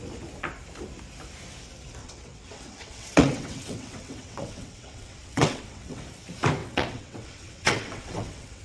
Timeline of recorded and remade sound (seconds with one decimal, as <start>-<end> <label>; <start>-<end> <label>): 0.0-2.0 recorded; 2.0-6.0 remade; 6.0-6.6 recorded; 6.6-8.6 remade